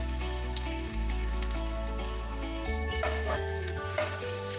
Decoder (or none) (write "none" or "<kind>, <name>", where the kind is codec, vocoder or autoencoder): autoencoder, DAC-VAE